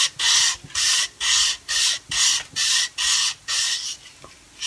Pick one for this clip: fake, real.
real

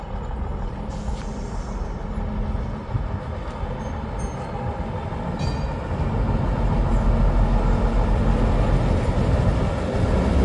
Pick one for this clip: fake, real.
real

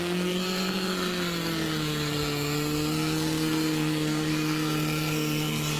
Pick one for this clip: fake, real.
fake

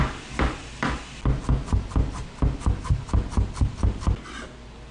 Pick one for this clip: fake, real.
real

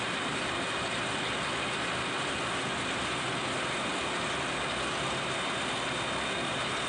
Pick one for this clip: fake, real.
real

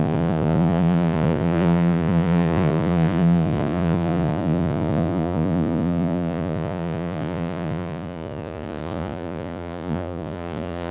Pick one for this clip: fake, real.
fake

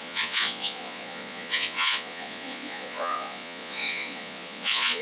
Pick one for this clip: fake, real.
fake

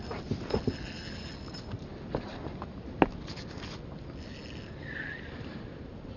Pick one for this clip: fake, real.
real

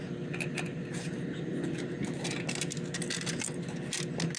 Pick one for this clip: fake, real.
real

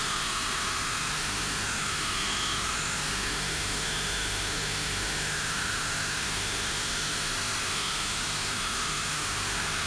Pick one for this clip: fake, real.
fake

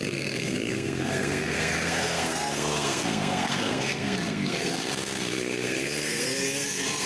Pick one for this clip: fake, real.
fake